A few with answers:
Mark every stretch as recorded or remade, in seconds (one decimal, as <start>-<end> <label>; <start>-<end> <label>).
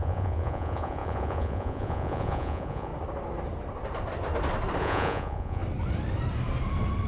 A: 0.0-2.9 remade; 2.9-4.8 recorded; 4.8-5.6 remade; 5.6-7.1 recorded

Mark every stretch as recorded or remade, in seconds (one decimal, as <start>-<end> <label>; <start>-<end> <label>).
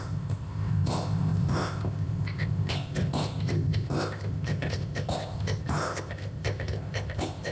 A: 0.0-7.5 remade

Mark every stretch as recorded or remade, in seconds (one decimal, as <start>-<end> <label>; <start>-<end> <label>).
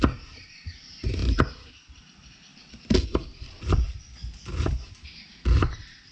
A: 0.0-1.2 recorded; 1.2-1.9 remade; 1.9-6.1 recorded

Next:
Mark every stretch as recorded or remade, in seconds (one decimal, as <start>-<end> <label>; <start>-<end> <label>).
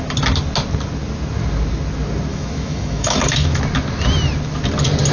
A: 0.0-2.3 recorded; 2.3-3.6 remade; 3.6-5.1 recorded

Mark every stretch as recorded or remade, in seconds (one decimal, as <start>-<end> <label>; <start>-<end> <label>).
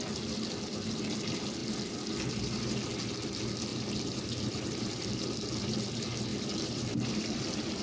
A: 0.0-3.7 recorded; 3.7-5.5 remade; 5.5-6.3 recorded; 6.3-7.8 remade